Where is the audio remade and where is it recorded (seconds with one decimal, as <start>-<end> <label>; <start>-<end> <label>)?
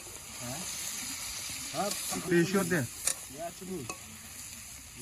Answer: 0.0-1.3 recorded; 1.3-2.6 remade; 2.6-5.0 recorded